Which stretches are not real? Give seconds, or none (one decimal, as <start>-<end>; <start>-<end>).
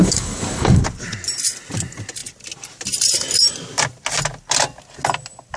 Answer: 0.0-0.8